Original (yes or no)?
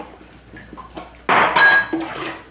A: yes